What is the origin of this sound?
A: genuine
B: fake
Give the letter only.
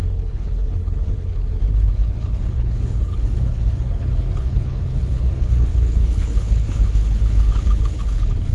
B